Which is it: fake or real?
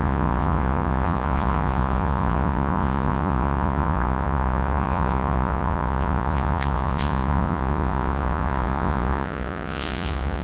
fake